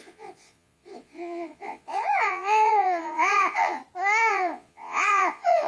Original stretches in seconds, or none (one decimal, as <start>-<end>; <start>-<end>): 3.8-4.3